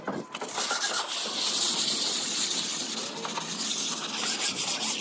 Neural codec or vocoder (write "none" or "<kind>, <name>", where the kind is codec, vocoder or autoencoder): none